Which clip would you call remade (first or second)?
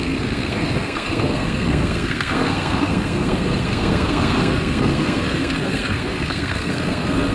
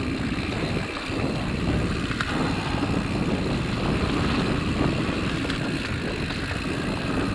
first